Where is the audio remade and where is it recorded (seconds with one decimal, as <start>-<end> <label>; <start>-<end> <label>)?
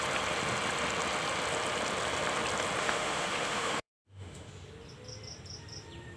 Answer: 0.0-2.8 recorded; 2.8-4.5 remade; 4.5-6.2 recorded